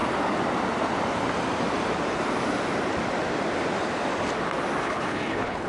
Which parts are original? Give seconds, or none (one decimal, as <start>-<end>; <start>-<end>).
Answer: 0.0-4.8